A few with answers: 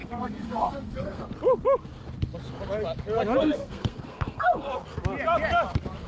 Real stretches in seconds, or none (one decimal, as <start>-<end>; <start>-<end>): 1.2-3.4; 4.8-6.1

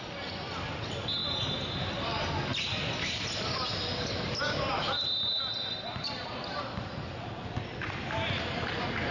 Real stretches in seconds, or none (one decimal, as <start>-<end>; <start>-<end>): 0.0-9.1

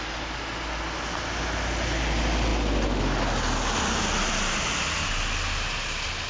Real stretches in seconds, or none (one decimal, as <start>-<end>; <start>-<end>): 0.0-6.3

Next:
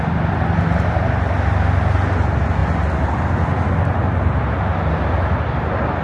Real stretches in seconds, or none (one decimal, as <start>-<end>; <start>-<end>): 0.0-6.0

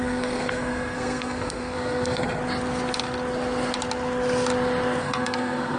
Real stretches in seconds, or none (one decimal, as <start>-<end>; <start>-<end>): 2.4-5.0